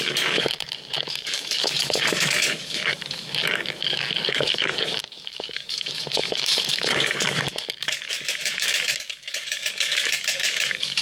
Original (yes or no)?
no